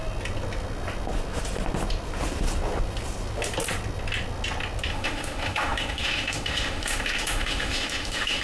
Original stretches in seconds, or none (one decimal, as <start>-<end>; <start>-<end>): 0.0-4.9